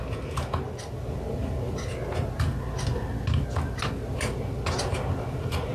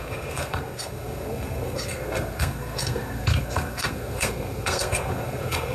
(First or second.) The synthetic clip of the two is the second